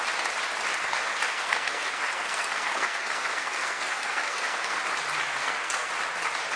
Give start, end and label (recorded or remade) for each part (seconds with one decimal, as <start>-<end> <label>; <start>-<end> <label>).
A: 0.0-0.8 recorded; 0.8-4.8 remade; 4.8-5.4 recorded; 5.4-5.9 remade; 5.9-6.6 recorded